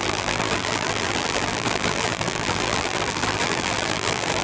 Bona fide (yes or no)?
no